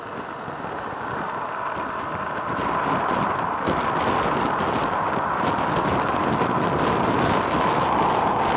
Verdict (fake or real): real